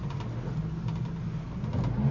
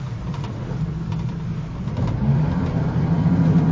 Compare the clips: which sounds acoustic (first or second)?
first